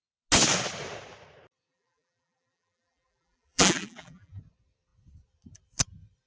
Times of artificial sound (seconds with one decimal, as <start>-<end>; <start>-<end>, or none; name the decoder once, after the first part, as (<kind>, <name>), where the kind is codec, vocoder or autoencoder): 1.7-4.4 (vocoder, BigVGAN v2)

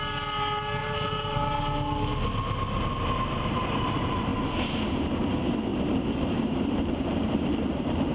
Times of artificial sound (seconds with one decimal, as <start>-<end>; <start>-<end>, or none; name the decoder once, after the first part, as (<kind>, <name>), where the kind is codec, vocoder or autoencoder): 0.8-1.6 (vocoder, BigVGAN v2); 5.7-8.1

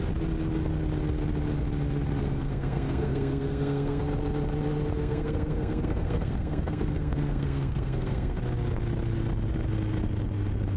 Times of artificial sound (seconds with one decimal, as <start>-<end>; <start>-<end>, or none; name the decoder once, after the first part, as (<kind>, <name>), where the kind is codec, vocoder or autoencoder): 2.2-4.0 (codec, SNAC); 5.0-8.4

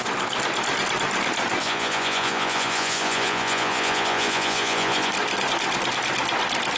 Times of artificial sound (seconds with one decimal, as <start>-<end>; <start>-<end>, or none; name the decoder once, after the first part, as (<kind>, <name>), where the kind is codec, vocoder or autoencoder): 1.6-5.1 (vocoder, Vocos)

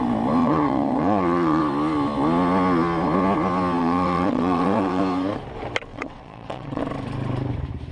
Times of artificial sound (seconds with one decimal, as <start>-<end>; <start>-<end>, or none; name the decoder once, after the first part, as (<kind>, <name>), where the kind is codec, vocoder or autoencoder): 0.4-1.6 (vocoder, WaveNeXt); 3.8-5.0; 5.9-6.8